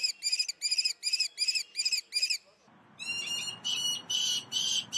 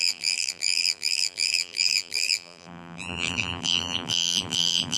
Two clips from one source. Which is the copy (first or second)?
second